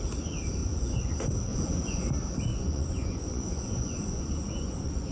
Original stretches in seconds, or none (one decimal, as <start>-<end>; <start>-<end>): 0.0-0.6; 1.1-1.5; 2.1-2.5